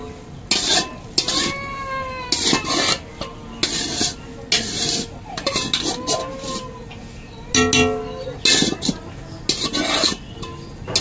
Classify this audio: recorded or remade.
recorded